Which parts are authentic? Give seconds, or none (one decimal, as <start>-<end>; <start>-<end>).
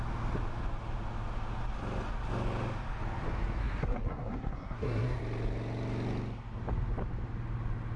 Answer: 0.0-3.6; 5.2-8.0